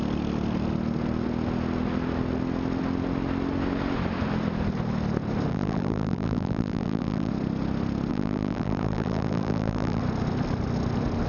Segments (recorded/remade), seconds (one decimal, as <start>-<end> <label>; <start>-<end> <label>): 0.0-5.5 recorded; 5.5-7.3 remade; 7.3-8.1 recorded; 8.1-10.0 remade; 10.0-11.3 recorded